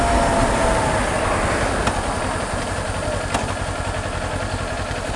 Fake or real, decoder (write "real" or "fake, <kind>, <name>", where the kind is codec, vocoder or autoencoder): real